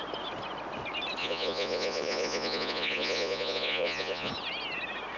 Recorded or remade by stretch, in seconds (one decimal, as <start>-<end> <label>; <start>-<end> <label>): 0.0-1.2 recorded; 1.2-4.3 remade; 4.3-5.2 recorded